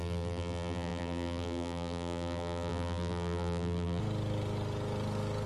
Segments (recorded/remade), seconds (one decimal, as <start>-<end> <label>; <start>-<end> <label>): 0.0-4.0 remade; 4.0-5.5 recorded